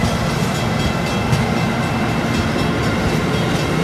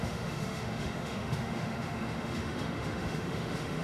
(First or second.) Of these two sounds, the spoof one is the second